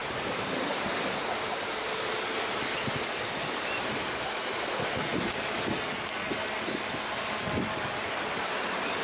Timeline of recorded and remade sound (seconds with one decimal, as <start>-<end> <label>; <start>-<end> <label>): 0.0-2.9 remade; 2.9-9.0 recorded